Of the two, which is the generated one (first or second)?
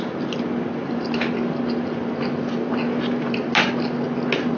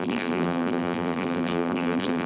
second